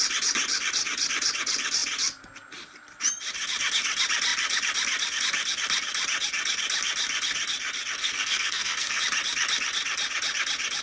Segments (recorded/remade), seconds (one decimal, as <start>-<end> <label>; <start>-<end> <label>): 0.0-8.0 recorded; 8.0-9.0 remade; 9.0-10.8 recorded